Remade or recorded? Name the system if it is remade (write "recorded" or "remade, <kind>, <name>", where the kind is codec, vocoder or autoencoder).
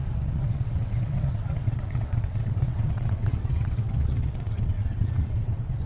remade, vocoder, WaveNeXt